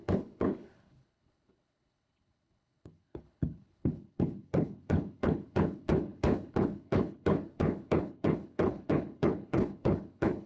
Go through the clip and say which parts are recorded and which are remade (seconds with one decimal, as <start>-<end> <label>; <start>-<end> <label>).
0.0-10.5 remade